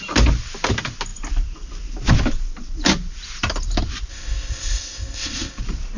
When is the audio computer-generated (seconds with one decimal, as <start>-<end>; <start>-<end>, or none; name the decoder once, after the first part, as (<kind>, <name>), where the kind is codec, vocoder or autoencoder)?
4.1-5.6 (codec, ZipCodec)